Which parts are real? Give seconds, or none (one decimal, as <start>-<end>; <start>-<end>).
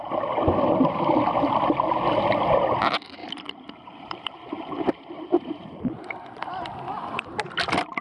0.0-3.2; 6.3-8.0